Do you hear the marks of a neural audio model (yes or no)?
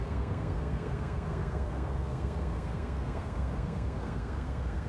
yes